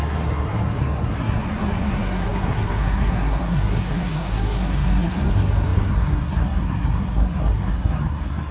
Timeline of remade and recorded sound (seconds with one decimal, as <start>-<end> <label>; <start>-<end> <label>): 0.0-8.5 remade